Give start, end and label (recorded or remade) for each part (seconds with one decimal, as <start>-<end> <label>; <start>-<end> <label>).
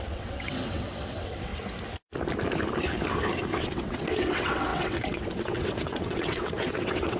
0.0-1.5 remade; 1.5-3.6 recorded; 3.6-7.2 remade